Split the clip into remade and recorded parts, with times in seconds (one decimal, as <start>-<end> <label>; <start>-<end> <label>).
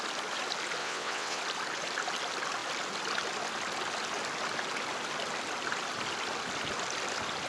0.0-0.8 recorded; 0.8-1.4 remade; 1.4-7.5 recorded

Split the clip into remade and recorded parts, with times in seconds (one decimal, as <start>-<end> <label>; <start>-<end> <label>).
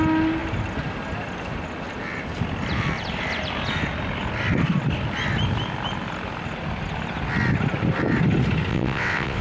0.0-8.7 recorded; 8.7-9.4 remade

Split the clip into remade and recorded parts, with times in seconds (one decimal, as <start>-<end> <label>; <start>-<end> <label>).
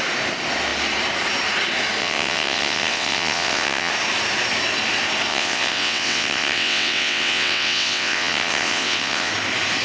0.0-2.0 recorded; 2.0-3.9 remade; 3.9-5.3 recorded; 5.3-9.3 remade; 9.3-9.8 recorded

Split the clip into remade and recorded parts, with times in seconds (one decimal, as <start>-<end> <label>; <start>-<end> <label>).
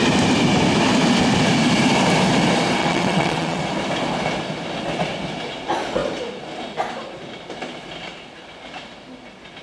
0.0-2.8 recorded; 2.8-3.6 remade; 3.6-9.6 recorded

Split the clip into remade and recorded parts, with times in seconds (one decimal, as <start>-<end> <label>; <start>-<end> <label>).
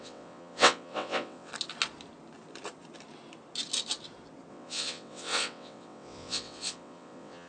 0.0-1.5 remade; 1.5-4.5 recorded; 4.5-7.5 remade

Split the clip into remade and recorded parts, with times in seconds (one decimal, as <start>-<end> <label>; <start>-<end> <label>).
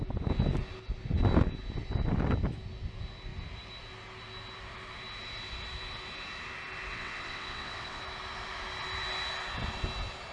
0.0-6.9 recorded; 6.9-8.0 remade; 8.0-10.3 recorded